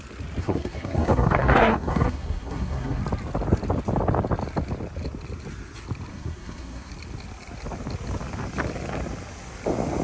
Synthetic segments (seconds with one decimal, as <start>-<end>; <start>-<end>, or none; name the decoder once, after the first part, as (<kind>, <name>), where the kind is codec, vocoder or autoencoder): 0.4-3.0 (codec, SNAC); 6.1-6.9